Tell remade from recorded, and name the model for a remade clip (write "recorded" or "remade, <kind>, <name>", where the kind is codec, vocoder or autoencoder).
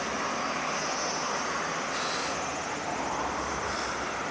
recorded